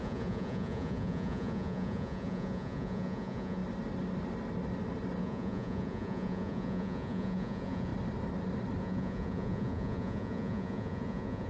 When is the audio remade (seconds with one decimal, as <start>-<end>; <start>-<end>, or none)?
0.0-3.6; 5.2-7.9; 8.8-11.5